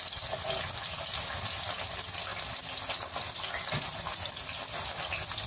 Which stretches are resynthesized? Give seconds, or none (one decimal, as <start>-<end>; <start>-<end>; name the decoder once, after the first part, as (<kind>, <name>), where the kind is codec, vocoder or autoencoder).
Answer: none